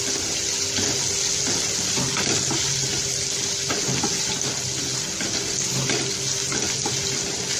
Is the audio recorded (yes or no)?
yes